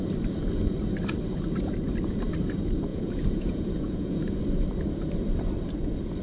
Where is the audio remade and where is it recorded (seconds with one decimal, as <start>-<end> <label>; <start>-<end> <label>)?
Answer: 0.0-2.9 recorded; 2.9-4.4 remade; 4.4-6.2 recorded